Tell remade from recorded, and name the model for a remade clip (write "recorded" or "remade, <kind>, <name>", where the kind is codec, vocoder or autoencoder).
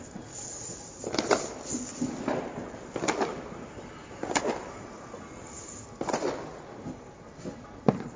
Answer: recorded